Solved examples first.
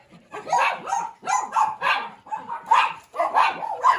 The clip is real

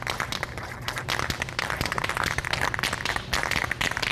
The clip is real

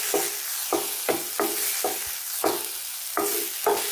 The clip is real